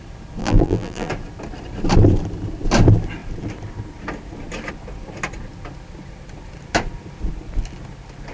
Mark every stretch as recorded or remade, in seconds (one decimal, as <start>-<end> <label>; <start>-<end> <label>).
0.0-0.4 recorded; 0.4-1.1 remade; 1.1-8.3 recorded